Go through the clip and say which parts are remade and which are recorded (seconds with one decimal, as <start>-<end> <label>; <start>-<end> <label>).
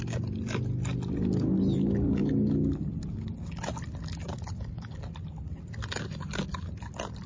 0.0-7.3 recorded